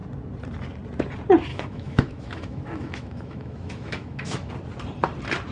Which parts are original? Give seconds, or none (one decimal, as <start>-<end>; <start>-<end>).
0.0-1.5; 4.5-5.5